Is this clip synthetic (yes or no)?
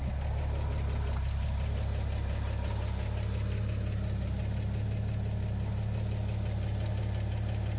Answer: no